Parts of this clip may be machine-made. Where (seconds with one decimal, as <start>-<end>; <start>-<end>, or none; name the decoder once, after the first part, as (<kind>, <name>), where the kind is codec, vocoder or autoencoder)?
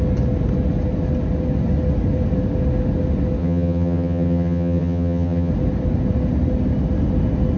3.4-5.5 (vocoder, HiFi-GAN)